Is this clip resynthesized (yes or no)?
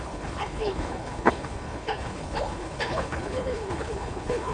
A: yes